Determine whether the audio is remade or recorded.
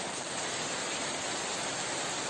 recorded